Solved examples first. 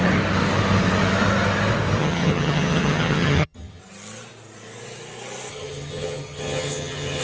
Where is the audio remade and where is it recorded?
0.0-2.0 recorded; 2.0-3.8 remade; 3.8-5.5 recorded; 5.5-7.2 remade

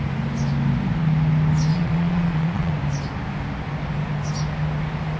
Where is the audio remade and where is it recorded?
0.0-1.7 recorded; 1.7-2.7 remade; 2.7-5.2 recorded

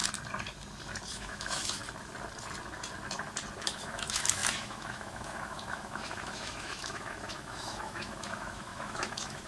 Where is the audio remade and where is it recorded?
0.0-1.1 recorded; 1.1-1.8 remade; 1.8-3.6 recorded; 3.6-9.5 remade

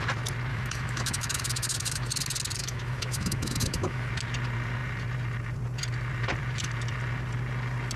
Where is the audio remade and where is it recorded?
0.0-0.5 recorded; 0.5-2.1 remade; 2.1-2.6 recorded; 2.6-4.1 remade; 4.1-8.0 recorded